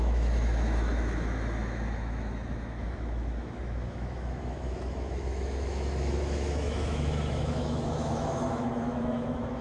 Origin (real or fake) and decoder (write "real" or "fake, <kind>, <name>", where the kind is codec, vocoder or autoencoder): fake, autoencoder, DAC-VAE